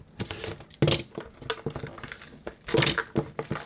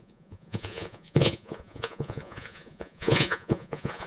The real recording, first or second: first